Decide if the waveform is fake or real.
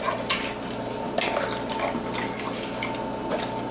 real